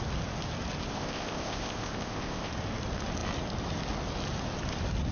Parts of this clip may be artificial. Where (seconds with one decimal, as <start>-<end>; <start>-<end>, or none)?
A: 0.9-2.5